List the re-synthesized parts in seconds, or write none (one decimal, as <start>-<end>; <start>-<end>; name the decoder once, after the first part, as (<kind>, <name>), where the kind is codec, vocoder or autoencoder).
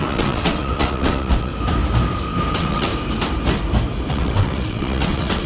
0.0-1.5 (vocoder, WaveNeXt); 2.5-2.9; 4.1-5.5